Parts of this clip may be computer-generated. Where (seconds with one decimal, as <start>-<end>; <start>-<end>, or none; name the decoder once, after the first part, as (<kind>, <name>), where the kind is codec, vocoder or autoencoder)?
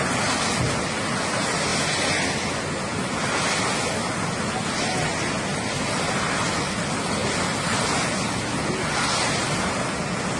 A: none